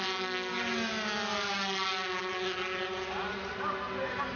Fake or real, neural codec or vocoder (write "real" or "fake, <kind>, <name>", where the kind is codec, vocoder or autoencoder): real